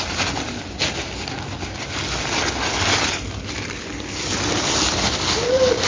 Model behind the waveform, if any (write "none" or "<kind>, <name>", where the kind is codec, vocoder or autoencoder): none